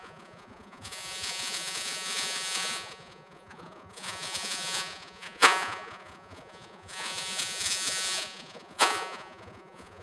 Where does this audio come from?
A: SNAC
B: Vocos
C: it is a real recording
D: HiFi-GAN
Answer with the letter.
B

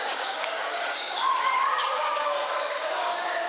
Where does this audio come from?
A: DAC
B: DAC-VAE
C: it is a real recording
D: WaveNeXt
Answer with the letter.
A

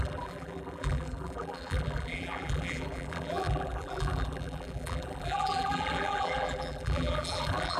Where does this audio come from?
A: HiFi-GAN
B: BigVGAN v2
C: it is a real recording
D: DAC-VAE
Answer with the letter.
B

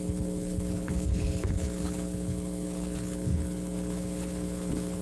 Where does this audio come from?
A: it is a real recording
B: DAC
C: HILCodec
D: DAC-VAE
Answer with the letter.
C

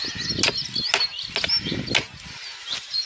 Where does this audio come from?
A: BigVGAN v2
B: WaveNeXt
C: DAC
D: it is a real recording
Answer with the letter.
D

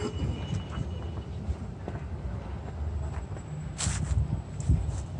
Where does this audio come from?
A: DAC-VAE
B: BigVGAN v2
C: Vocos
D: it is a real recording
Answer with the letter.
D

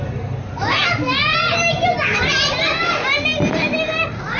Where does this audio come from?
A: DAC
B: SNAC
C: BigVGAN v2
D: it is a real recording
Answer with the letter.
D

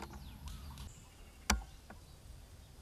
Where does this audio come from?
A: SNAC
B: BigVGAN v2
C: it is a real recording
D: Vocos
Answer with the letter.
C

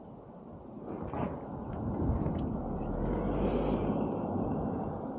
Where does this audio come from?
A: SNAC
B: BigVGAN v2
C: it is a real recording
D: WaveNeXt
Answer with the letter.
C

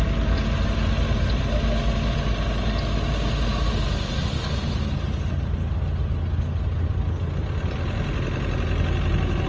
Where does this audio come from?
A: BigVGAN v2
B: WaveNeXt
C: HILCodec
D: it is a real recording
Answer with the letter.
D